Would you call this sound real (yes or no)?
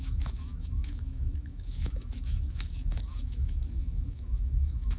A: no